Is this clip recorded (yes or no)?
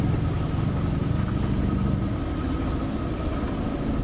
yes